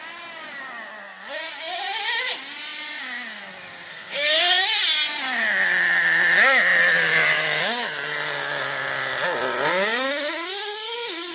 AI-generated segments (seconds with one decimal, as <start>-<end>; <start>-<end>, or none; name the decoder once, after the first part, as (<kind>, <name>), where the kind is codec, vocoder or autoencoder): 3.9-4.6 (codec, SNAC)

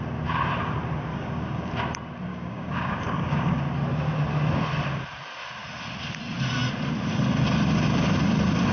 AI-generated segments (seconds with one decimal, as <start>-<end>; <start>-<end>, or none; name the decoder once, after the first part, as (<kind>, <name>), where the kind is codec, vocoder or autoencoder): 1.1-1.7 (codec, DAC); 2.3-3.6

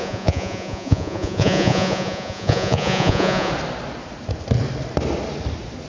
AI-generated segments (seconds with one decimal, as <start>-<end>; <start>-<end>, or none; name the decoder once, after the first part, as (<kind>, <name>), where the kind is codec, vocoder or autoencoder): 0.0-3.5 (vocoder, Vocos)

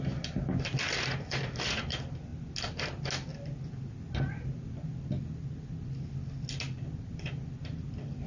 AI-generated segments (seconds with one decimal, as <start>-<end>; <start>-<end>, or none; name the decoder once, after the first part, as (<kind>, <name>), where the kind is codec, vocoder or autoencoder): none

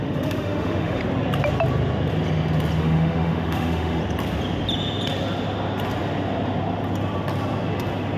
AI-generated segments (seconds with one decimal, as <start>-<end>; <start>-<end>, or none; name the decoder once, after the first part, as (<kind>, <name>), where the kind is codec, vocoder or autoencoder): 0.0-1.0 (autoencoder, DAC-VAE); 2.8-4.0

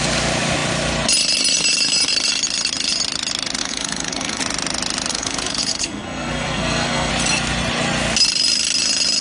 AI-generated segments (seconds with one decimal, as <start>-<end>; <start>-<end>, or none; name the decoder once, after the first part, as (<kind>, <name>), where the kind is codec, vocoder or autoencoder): 3.6-4.4 (codec, SNAC); 5.1-7.1